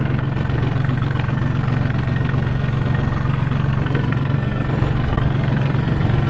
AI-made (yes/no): yes